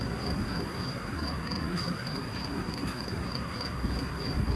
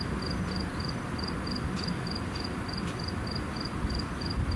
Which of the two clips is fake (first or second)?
first